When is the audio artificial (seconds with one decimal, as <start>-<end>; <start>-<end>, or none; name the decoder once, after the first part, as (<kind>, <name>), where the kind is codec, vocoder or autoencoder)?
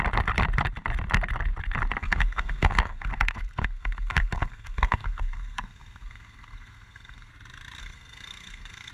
2.0-7.3 (codec, SNAC); 7.8-8.9